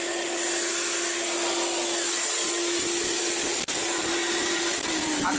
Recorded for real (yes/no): yes